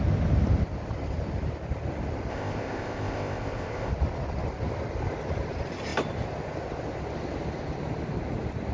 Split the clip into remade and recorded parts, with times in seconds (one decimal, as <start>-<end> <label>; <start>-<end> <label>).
0.0-2.3 recorded; 2.3-3.9 remade; 3.9-8.7 recorded